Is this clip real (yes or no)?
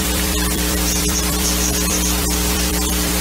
no